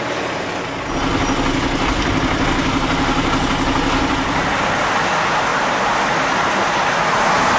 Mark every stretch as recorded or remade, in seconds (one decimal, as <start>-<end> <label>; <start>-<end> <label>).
0.0-7.6 recorded

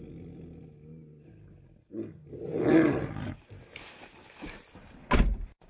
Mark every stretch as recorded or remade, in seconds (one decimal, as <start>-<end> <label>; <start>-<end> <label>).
0.0-5.7 recorded

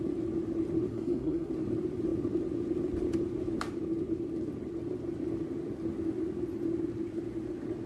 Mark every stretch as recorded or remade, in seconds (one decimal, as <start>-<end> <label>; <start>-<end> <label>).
0.0-0.9 recorded; 0.9-1.5 remade; 1.5-7.9 recorded

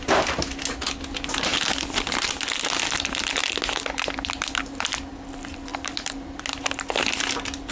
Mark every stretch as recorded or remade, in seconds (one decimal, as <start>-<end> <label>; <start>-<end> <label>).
0.0-5.7 recorded; 5.7-6.4 remade; 6.4-7.7 recorded

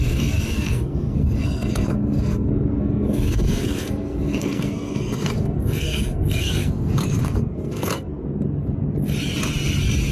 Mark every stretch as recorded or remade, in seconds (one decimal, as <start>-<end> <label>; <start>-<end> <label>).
0.0-8.1 remade; 8.1-10.1 recorded

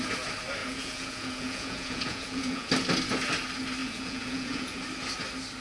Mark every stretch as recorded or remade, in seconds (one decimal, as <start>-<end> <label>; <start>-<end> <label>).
0.0-0.6 recorded; 0.6-2.7 remade; 2.7-3.8 recorded; 3.8-4.8 remade; 4.8-5.6 recorded

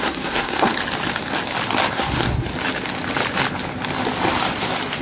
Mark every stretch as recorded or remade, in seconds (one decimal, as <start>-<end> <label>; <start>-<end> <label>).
0.0-0.7 remade; 0.7-1.9 recorded; 1.9-2.5 remade; 2.5-5.0 recorded

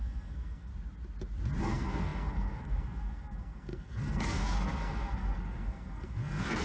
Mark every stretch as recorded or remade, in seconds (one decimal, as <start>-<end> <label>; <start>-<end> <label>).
0.0-0.7 remade; 0.7-1.6 recorded; 1.6-6.6 remade